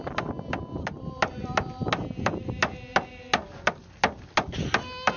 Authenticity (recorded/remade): recorded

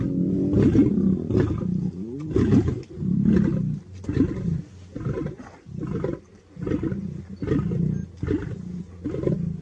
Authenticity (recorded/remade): recorded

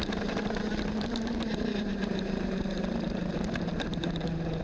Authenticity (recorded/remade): remade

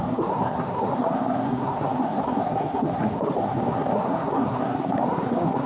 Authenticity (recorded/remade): remade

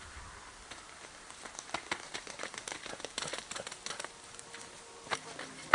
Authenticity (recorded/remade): recorded